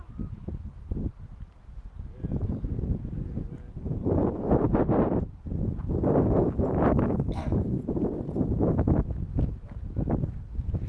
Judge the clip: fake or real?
real